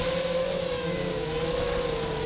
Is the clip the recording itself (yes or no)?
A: yes